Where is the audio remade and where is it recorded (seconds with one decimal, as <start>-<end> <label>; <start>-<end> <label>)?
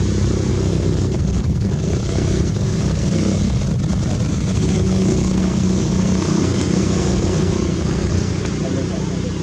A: 0.0-0.5 recorded; 0.5-3.6 remade; 3.6-4.3 recorded; 4.3-8.5 remade; 8.5-9.4 recorded